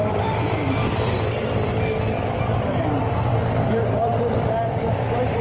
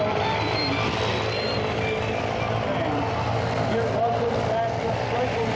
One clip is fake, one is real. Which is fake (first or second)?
first